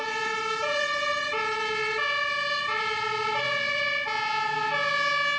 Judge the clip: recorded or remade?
recorded